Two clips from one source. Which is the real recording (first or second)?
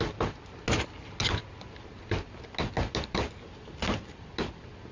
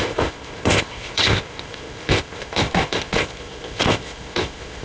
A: first